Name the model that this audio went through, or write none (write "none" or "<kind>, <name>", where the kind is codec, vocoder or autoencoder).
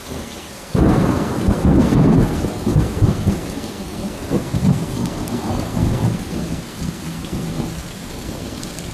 codec, SNAC